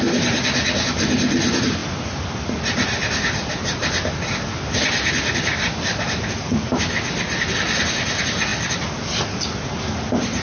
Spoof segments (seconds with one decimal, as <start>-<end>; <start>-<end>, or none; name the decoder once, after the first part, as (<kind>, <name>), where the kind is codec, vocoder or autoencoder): none